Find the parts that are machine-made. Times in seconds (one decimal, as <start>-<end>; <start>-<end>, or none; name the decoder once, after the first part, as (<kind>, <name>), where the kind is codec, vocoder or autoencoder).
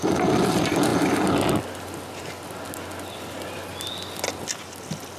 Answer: none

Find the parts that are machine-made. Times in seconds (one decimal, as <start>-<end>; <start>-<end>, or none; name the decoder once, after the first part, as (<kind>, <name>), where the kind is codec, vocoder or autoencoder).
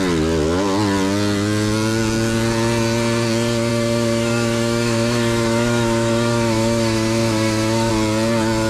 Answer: 3.7-7.9 (autoencoder, DAC-VAE)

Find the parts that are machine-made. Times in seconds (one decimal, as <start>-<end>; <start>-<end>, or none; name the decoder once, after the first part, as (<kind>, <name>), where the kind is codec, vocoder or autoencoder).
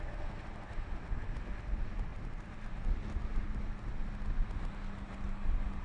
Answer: none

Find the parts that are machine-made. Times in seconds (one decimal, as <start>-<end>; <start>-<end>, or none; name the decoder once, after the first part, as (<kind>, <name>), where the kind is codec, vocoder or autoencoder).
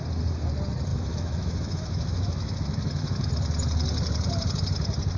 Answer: 0.9-3.3 (autoencoder, DAC-VAE)